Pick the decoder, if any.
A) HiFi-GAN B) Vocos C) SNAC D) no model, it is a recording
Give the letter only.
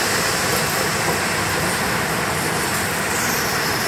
D